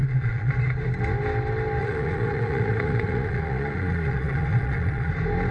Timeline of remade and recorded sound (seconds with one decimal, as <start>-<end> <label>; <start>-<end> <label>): 0.0-0.5 remade; 0.5-1.8 recorded; 1.8-5.1 remade; 5.1-5.5 recorded